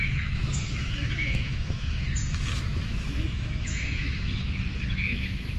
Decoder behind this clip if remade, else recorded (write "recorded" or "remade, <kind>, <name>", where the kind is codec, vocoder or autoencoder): remade, autoencoder, DAC-VAE